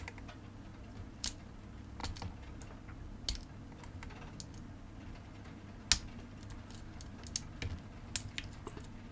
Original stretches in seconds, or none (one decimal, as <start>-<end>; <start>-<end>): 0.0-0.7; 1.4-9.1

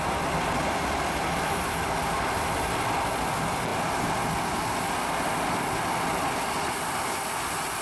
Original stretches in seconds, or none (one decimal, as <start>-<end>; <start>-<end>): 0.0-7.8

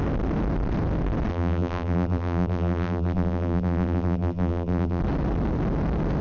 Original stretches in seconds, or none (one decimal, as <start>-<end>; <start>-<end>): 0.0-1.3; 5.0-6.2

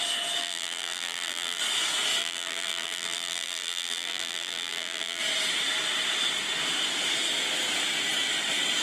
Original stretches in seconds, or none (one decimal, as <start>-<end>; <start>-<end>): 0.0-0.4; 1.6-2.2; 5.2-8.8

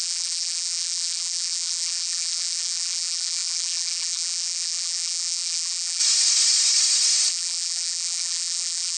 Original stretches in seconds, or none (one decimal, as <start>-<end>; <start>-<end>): 6.0-7.3